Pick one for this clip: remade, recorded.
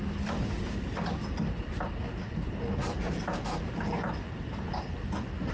recorded